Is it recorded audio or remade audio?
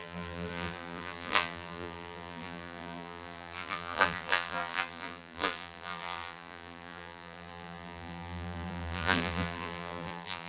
remade